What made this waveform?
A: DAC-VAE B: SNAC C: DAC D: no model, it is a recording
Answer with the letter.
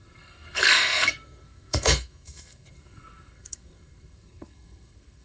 B